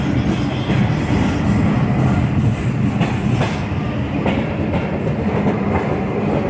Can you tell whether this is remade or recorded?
recorded